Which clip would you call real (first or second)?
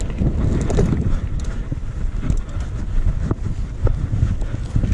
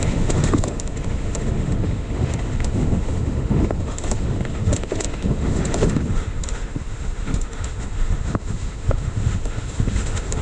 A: first